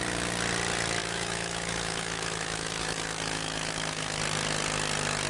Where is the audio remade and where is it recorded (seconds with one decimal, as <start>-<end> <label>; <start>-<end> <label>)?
0.0-1.0 recorded; 1.0-4.2 remade; 4.2-5.3 recorded